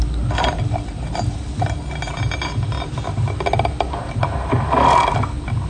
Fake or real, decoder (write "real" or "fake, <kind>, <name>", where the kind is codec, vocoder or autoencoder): real